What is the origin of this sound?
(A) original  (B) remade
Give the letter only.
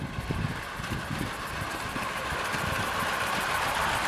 A